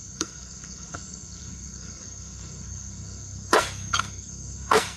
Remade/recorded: remade